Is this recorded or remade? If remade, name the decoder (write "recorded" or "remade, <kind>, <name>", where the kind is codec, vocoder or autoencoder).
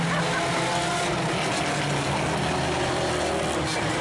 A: recorded